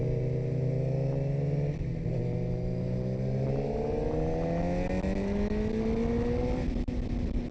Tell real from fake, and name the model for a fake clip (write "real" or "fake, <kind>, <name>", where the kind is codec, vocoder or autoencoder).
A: real